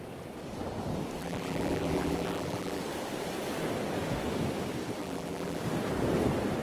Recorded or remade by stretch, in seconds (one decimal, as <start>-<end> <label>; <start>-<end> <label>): 0.0-1.2 recorded; 1.2-2.8 remade; 2.8-5.0 recorded; 5.0-5.6 remade; 5.6-6.6 recorded